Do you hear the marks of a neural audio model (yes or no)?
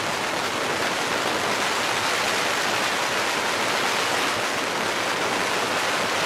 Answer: no